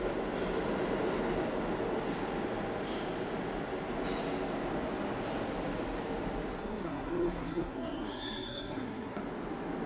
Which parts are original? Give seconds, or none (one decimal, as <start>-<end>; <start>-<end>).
0.0-6.6; 9.2-9.9

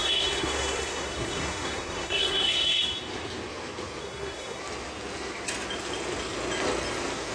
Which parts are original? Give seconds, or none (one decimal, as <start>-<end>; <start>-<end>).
2.8-4.0; 4.6-7.3